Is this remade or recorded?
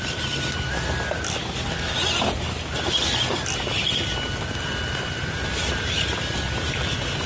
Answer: recorded